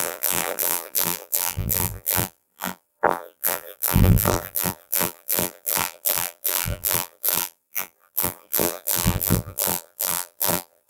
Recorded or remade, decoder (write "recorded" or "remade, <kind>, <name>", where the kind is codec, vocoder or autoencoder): remade, vocoder, BigVGAN v2